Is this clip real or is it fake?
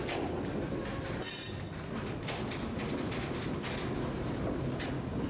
real